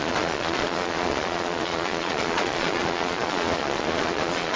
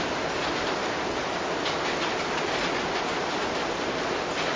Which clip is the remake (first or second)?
first